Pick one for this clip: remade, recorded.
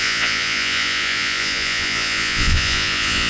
remade